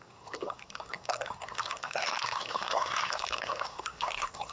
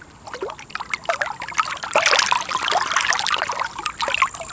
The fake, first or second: first